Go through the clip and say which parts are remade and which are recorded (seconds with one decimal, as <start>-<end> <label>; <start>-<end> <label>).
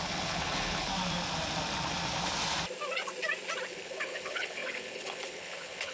0.0-0.9 remade; 0.9-3.7 recorded; 3.7-5.9 remade